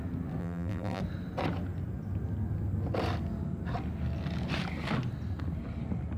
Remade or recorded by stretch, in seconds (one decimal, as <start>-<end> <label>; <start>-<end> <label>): 0.0-0.4 recorded; 0.4-1.0 remade; 1.0-6.2 recorded